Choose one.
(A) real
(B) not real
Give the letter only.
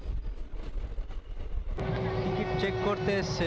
A